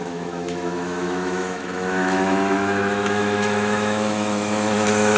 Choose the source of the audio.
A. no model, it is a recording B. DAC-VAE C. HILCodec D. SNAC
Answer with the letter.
B